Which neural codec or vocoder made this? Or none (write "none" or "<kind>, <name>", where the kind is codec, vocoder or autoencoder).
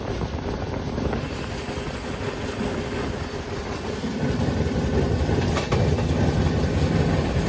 none